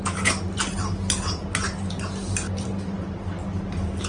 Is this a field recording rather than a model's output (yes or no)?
yes